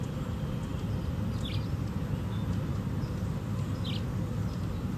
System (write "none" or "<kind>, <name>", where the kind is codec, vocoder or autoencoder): none